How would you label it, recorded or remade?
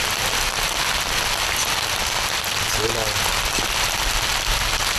recorded